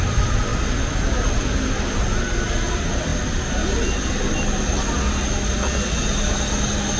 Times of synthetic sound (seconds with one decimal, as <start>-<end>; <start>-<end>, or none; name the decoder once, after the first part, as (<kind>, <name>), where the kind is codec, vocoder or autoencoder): none